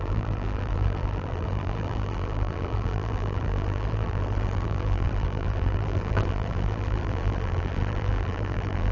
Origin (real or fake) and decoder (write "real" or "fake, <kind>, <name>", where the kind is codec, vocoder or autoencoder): fake, vocoder, BigVGAN v2